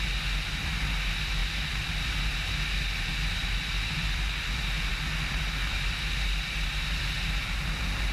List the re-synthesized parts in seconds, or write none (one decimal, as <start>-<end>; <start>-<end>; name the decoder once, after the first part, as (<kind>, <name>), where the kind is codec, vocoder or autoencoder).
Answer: 3.4-4.4 (vocoder, BigVGAN v2)